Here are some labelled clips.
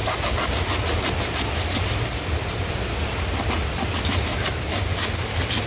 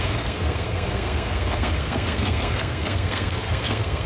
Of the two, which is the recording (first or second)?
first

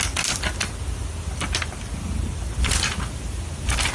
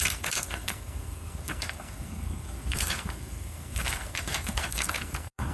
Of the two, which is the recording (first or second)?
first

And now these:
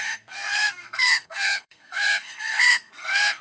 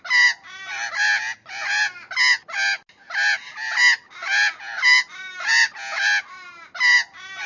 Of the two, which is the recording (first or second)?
second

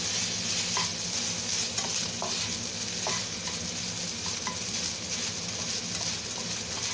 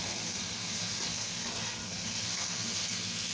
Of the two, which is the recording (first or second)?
first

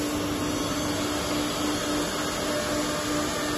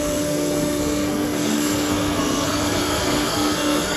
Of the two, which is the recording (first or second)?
first